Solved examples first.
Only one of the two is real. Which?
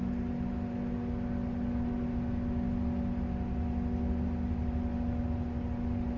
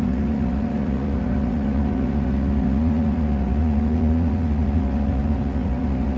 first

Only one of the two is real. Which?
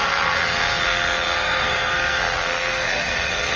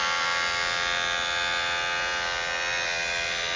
second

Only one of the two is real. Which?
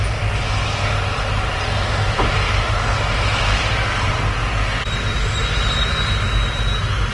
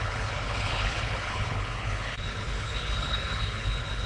first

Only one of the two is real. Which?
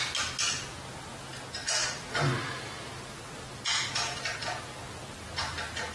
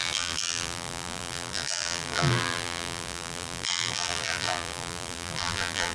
first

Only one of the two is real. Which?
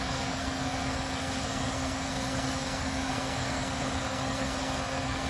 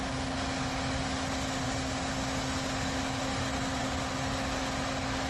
second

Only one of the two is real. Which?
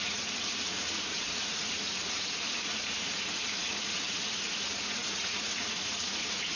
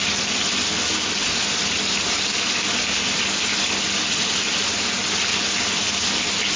second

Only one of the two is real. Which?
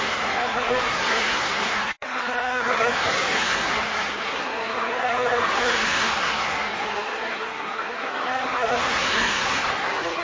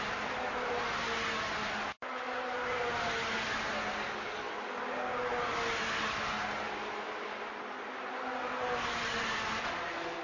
second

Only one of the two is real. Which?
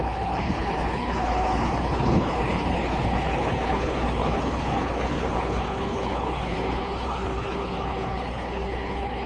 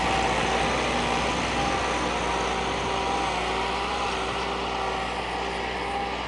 second